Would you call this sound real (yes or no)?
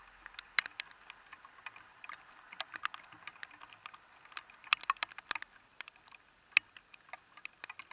yes